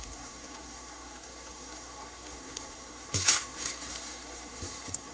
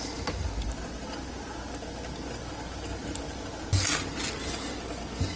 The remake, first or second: first